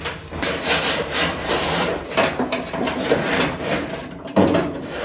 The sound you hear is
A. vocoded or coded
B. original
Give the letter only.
A